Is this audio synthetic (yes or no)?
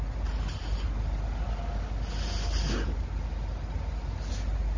no